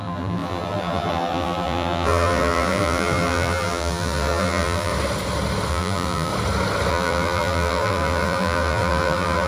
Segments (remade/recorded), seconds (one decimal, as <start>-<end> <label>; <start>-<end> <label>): 0.0-4.9 remade; 4.9-5.7 recorded; 5.7-6.3 remade; 6.3-6.9 recorded; 6.9-9.5 remade